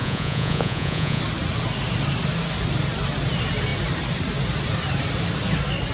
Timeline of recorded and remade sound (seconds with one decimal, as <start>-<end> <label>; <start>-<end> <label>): 0.0-1.2 remade; 1.2-5.9 recorded